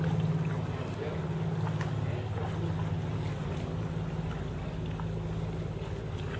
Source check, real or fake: real